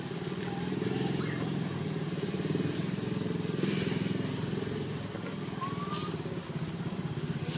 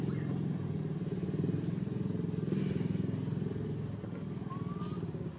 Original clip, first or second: second